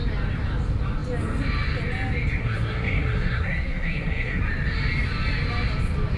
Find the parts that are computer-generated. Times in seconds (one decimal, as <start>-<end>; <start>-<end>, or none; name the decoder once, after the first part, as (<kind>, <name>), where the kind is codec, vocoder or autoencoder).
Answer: 2.4-4.4 (codec, SNAC)